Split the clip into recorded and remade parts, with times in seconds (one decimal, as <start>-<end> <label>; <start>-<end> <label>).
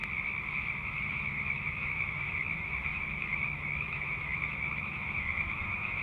0.0-1.1 recorded; 1.1-6.0 remade